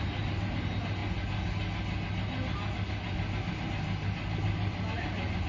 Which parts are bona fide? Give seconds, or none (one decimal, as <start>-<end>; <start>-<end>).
0.0-5.5